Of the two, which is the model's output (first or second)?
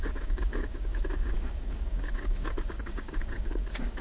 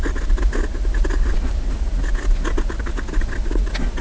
first